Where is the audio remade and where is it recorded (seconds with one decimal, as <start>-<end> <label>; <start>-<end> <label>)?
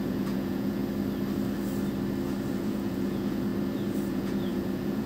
0.0-0.8 remade; 0.8-2.5 recorded; 2.5-3.5 remade; 3.5-4.1 recorded; 4.1-5.1 remade